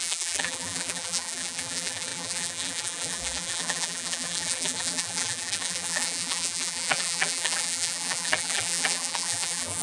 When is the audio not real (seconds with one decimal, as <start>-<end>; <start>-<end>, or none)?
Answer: 0.0-9.8

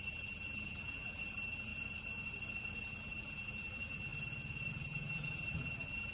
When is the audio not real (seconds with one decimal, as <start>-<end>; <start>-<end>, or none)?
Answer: 0.0-1.7; 2.8-4.1; 4.7-6.1

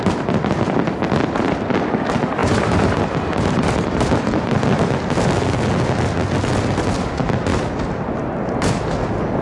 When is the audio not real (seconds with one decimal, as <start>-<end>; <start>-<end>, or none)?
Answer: 2.4-5.3

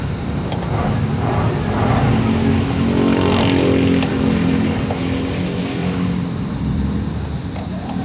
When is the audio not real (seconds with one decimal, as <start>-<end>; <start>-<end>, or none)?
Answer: 5.8-7.4